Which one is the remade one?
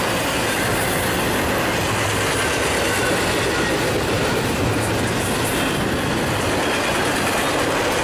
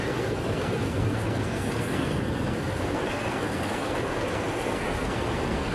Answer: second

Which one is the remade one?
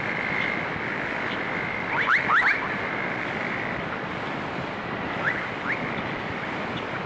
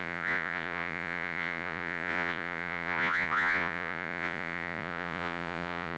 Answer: second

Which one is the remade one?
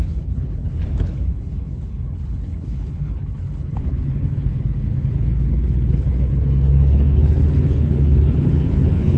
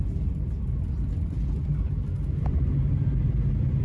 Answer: first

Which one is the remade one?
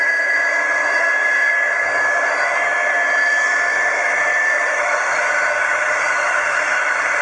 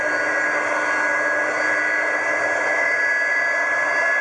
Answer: first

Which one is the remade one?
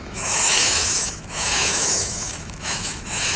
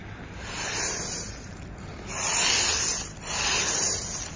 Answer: first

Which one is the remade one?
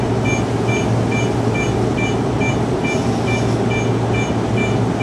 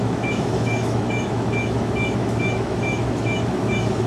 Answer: second